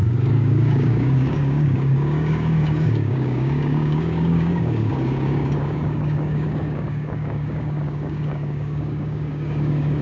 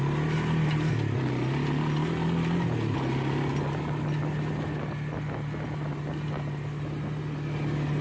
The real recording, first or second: second